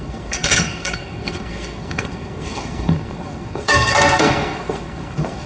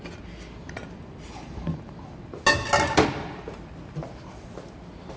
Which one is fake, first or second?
first